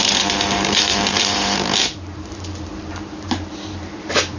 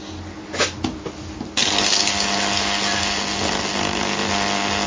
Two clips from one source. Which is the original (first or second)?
second